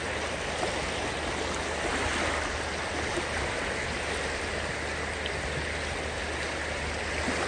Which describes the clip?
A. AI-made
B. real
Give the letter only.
B